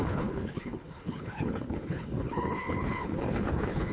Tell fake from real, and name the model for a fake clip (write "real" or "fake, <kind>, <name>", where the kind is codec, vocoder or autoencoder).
fake, codec, HILCodec